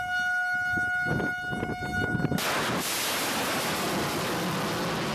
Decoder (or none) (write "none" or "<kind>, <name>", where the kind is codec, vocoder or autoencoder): none